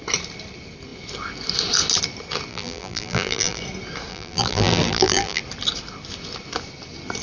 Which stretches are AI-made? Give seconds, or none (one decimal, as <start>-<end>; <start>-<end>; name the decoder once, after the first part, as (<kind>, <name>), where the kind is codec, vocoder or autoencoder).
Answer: 2.5-3.6 (vocoder, BigVGAN v2); 4.1-5.4